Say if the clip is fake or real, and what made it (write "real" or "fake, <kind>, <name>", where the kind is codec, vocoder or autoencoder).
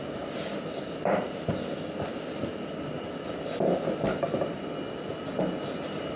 real